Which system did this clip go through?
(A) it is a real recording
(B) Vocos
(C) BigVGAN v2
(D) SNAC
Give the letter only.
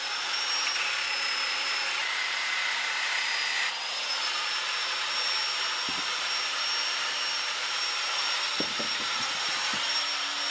C